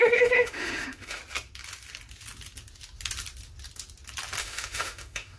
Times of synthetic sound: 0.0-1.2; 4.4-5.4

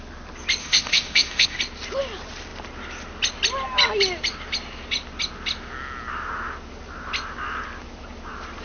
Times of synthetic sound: 0.6-1.6

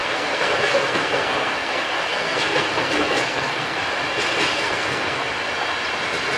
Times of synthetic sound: 0.0-3.8; 4.5-5.3

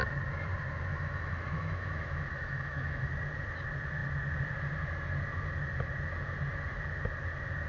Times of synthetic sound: 0.9-3.1

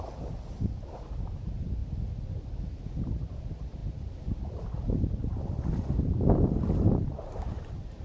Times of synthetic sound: none

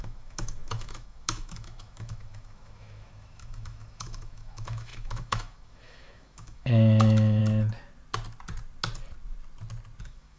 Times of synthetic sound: 0.0-7.4; 10.0-10.4

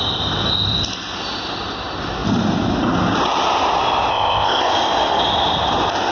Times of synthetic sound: 4.1-4.7